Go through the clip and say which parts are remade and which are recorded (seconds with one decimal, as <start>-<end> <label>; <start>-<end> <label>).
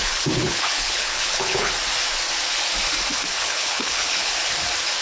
0.0-1.7 remade; 1.7-3.3 recorded; 3.3-4.3 remade; 4.3-5.0 recorded